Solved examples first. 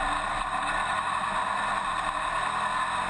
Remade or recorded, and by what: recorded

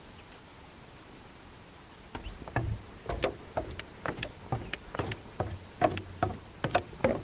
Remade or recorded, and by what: recorded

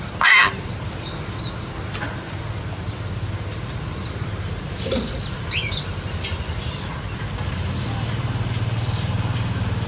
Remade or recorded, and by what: recorded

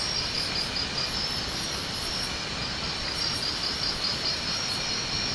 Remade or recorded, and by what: recorded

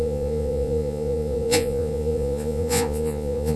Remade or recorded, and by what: remade, vocoder, Vocos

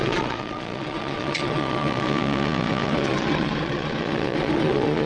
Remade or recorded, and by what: remade, vocoder, Vocos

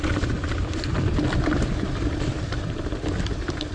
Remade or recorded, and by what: remade, vocoder, BigVGAN v2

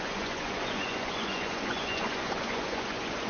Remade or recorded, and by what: remade, vocoder, Vocos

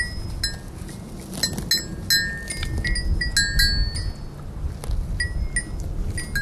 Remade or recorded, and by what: recorded